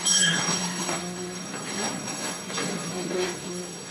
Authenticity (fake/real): fake